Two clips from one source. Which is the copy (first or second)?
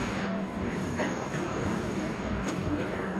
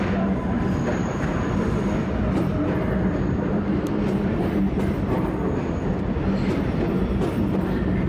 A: first